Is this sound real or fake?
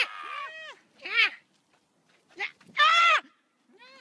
real